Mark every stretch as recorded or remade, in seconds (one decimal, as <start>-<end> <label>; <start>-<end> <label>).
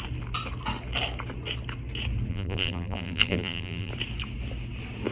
0.0-2.3 recorded; 2.3-3.9 remade; 3.9-5.1 recorded